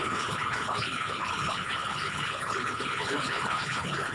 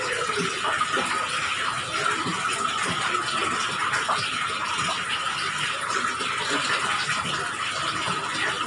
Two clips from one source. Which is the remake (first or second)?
first